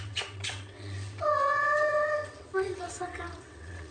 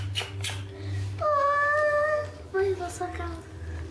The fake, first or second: first